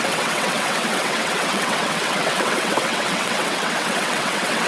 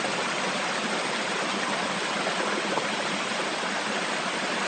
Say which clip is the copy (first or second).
first